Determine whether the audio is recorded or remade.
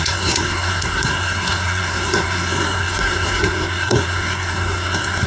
remade